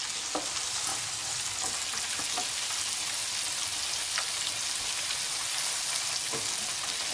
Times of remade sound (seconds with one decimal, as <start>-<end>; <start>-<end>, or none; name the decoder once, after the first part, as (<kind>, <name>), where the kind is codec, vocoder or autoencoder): none